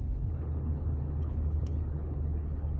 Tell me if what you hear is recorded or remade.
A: remade